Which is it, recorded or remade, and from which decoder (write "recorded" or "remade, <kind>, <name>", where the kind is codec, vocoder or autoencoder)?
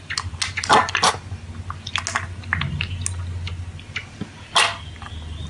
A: recorded